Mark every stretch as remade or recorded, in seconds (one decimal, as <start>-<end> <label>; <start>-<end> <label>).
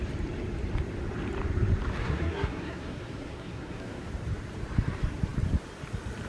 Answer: 0.0-2.0 recorded; 2.0-4.1 remade; 4.1-6.3 recorded